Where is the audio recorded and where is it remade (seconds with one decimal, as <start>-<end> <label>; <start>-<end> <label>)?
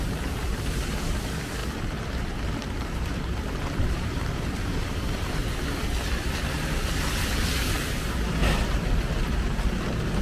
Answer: 0.0-5.4 remade; 5.4-7.4 recorded; 7.4-10.2 remade